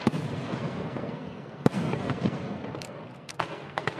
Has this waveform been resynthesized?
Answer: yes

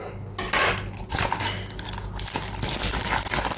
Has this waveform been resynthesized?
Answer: no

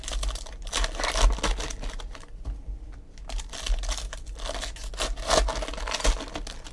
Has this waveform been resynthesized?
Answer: no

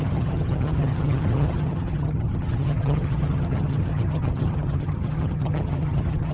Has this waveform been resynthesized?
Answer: yes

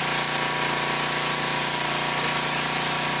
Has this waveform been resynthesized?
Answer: no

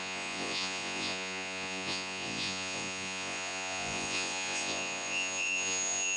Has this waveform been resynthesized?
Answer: yes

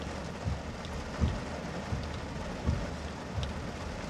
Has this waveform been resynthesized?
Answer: no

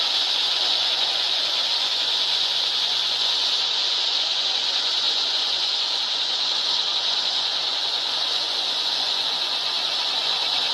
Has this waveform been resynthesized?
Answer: yes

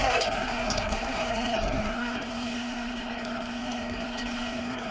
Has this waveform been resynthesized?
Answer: yes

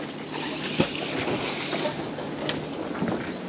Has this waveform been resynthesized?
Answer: no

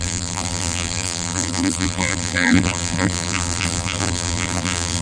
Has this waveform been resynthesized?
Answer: yes